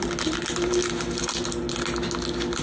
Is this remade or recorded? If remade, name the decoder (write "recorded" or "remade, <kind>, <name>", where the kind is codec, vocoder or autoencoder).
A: recorded